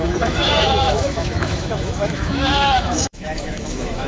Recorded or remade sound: remade